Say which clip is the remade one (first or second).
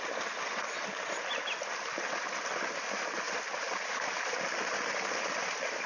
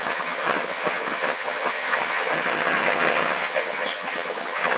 second